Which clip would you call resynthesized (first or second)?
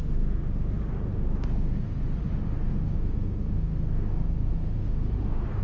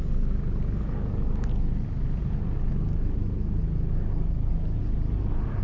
first